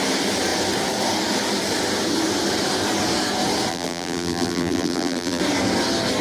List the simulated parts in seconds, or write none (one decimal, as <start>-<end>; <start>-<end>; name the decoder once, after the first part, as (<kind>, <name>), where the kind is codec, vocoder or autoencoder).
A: 3.7-5.4 (vocoder, BigVGAN v2)